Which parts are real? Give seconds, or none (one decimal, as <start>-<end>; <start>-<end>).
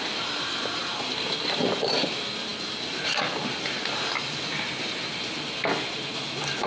0.0-6.7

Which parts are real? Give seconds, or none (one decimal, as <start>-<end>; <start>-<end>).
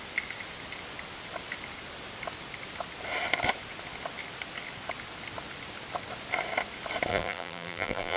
0.0-7.1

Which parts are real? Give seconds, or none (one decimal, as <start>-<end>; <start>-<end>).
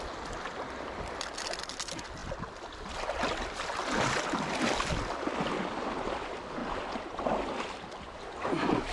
0.0-8.9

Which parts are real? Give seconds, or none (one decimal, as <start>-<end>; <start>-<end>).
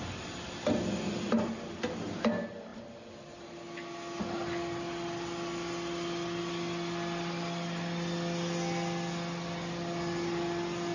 0.0-10.9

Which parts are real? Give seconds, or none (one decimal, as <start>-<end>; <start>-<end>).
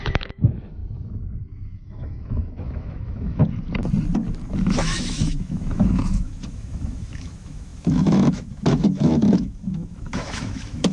0.8-1.4; 3.4-4.8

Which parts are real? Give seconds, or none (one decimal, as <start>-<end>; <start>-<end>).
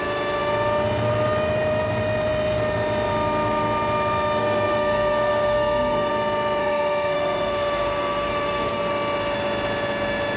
0.0-4.4; 6.1-6.6; 8.9-10.4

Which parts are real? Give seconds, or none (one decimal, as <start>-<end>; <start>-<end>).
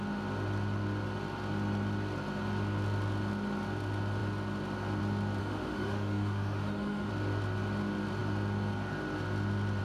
0.0-5.4; 7.1-9.8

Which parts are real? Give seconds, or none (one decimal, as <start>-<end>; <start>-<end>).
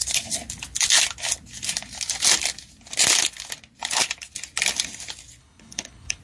0.0-5.4